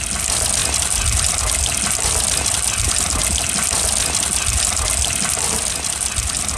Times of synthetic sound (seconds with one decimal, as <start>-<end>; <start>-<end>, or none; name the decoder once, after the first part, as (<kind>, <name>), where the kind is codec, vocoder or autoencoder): none